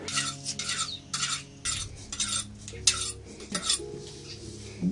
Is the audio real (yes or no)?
yes